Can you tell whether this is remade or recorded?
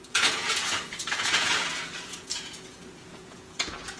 remade